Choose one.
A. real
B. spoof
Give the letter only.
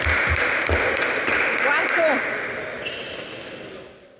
A